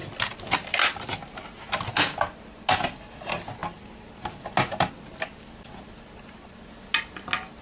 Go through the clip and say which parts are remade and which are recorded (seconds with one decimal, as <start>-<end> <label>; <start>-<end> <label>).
0.0-7.6 recorded